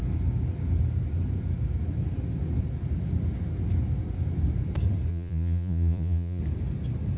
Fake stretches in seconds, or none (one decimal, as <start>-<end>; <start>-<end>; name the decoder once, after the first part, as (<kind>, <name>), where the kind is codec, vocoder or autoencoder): 5.1-6.4 (vocoder, Vocos)